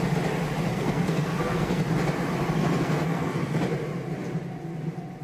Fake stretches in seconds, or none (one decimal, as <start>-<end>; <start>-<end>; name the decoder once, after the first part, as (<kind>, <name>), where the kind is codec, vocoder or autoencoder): 0.7-1.8 (codec, SNAC); 2.6-3.6